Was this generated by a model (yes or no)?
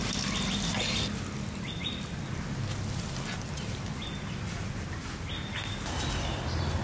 no